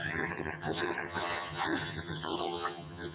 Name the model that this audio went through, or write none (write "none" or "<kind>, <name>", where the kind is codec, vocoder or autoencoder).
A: vocoder, HiFi-GAN